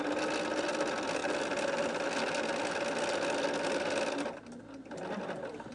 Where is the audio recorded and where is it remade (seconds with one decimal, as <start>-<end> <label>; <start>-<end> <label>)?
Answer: 0.0-5.7 recorded